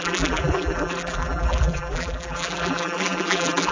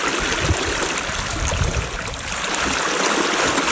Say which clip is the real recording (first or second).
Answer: second